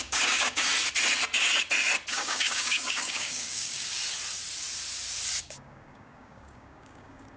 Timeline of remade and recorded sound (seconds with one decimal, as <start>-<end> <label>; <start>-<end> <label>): 0.0-0.7 remade; 0.7-2.1 recorded; 2.1-4.0 remade; 4.0-5.4 recorded; 5.4-7.4 remade